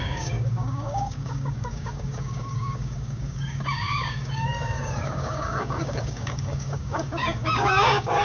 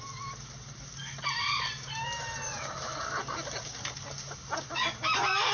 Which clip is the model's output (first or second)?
first